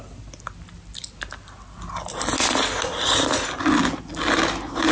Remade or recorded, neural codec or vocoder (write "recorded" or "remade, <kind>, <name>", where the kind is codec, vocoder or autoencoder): recorded